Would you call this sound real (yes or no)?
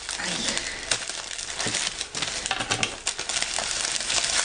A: yes